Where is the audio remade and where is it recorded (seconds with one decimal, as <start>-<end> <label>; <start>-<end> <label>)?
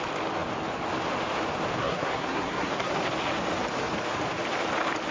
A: 0.0-1.8 recorded; 1.8-2.9 remade; 2.9-5.1 recorded